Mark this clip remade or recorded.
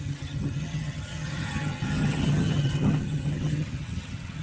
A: remade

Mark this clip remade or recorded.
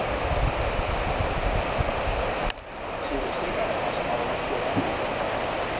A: recorded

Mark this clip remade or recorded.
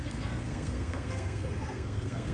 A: remade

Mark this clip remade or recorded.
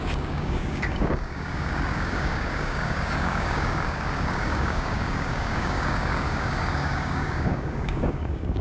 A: remade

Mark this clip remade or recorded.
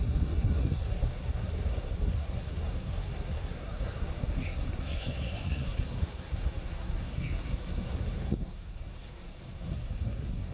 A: remade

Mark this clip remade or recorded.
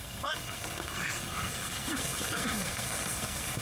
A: remade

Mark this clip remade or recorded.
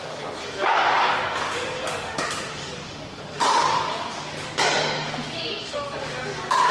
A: remade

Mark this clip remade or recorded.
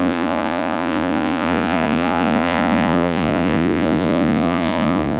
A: remade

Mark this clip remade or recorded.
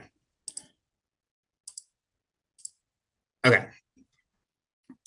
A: recorded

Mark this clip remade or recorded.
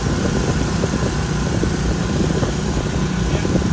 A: remade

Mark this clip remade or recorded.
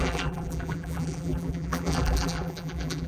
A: remade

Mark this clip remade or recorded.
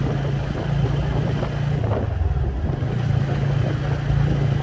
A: recorded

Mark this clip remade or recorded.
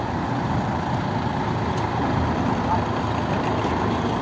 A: recorded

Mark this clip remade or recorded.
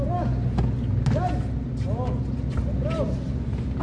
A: recorded